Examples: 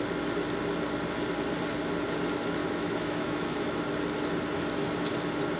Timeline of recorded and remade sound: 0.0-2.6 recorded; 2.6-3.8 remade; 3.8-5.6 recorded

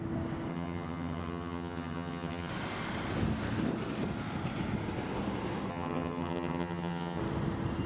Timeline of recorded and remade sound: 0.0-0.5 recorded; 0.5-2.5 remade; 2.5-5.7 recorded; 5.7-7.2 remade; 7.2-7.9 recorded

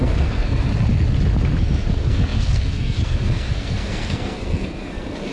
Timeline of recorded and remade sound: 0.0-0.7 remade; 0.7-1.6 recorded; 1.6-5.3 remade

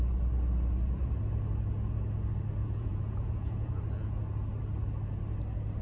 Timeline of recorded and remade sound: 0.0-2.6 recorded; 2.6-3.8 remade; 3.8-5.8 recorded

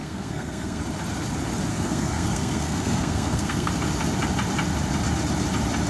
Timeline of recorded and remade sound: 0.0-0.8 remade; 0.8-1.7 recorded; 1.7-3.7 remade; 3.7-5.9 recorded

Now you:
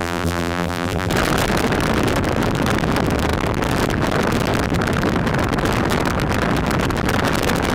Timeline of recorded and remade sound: 0.0-1.1 remade; 1.1-7.7 recorded

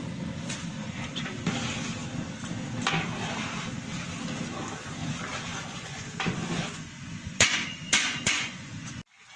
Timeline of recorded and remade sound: 0.0-0.7 recorded; 0.7-1.3 remade; 1.3-5.5 recorded; 5.5-8.9 remade; 8.9-9.4 recorded

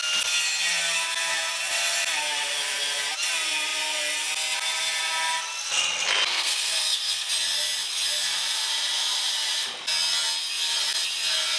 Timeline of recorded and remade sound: 0.0-6.3 recorded; 6.3-7.3 remade; 7.3-11.6 recorded